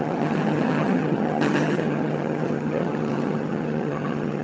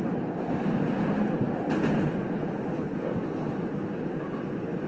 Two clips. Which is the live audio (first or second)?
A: second